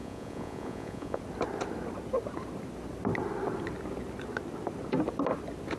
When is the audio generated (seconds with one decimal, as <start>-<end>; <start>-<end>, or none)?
0.0-1.2